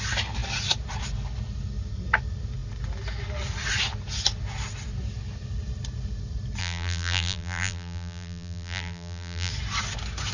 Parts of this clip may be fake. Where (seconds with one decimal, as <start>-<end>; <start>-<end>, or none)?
6.6-9.5